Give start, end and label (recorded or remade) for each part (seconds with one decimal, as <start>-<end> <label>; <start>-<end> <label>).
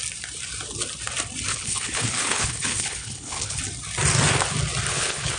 0.0-1.5 recorded; 1.5-3.6 remade; 3.6-4.9 recorded; 4.9-5.4 remade